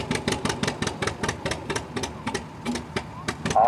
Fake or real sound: real